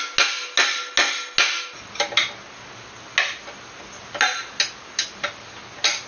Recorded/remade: recorded